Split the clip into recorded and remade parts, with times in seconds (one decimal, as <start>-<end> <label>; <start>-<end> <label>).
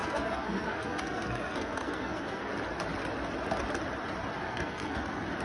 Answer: 0.0-2.5 remade; 2.5-4.4 recorded; 4.4-5.0 remade; 5.0-5.4 recorded